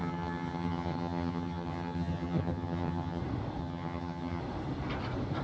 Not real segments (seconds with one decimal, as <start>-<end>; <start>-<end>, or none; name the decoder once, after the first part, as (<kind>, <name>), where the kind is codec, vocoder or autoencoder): 0.0-3.2 (vocoder, HiFi-GAN); 3.6-4.4